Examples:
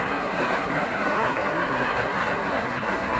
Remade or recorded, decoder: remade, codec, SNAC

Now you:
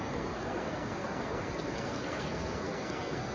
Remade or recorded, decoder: remade, codec, SNAC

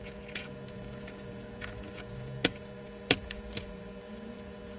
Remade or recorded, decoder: remade, vocoder, Vocos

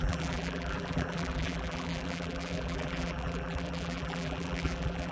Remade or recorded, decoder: remade, vocoder, BigVGAN v2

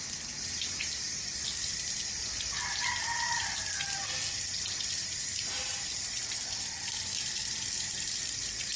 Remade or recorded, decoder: recorded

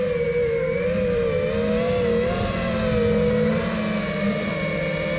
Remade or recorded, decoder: recorded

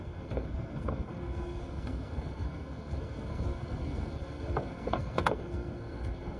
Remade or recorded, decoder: remade, codec, SNAC